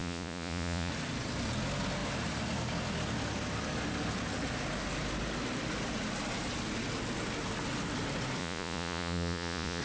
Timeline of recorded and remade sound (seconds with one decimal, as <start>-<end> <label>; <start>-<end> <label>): 0.0-0.9 remade; 0.9-8.4 recorded; 8.4-9.8 remade